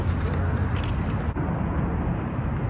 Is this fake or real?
real